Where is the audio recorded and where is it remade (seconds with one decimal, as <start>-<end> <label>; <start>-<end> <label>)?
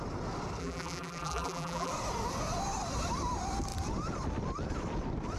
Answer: 0.0-0.6 recorded; 0.6-1.9 remade; 1.9-5.4 recorded